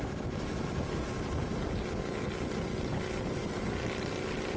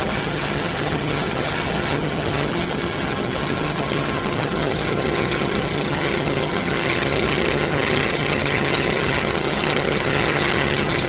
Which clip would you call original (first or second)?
first